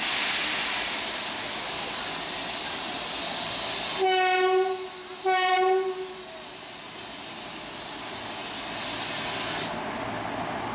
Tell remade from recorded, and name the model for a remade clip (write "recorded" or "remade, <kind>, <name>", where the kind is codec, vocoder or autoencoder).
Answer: recorded